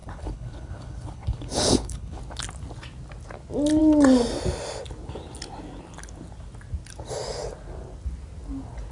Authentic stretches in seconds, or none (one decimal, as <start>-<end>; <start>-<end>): 2.2-8.9